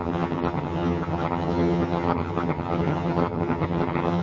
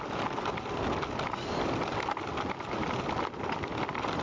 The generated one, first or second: first